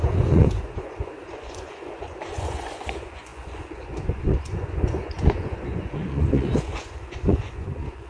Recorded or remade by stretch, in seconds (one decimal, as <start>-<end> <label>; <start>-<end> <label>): 0.0-8.1 remade